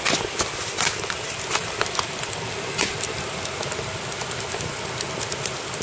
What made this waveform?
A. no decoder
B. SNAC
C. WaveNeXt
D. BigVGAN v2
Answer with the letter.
A